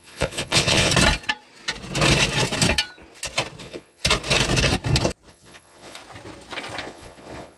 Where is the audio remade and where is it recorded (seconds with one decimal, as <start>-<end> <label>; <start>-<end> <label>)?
0.0-0.9 remade; 0.9-3.6 recorded; 3.6-4.0 remade; 4.0-5.3 recorded; 5.3-6.0 remade; 6.0-6.8 recorded; 6.8-7.6 remade